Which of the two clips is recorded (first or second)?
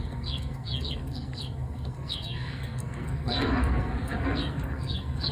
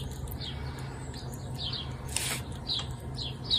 second